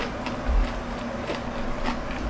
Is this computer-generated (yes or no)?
no